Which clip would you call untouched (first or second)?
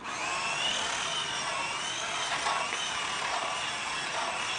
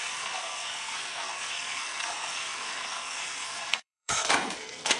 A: first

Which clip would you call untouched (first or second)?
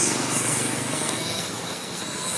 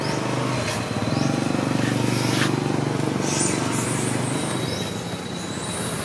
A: second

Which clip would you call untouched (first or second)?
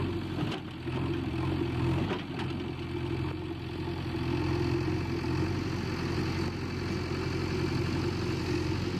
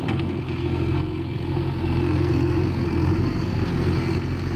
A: first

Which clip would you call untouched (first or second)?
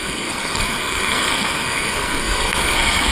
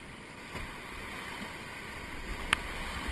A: second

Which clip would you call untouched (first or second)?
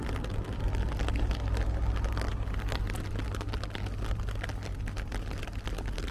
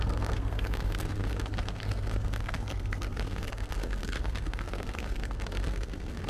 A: first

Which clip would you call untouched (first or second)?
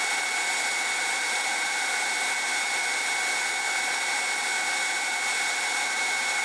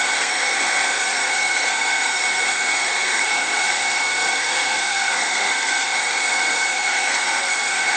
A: first